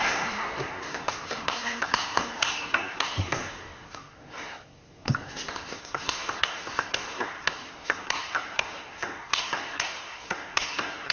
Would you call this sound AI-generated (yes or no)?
yes